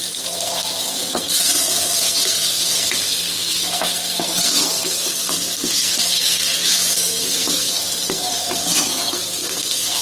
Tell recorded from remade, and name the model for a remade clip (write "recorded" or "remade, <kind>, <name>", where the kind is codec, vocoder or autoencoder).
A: remade, codec, SNAC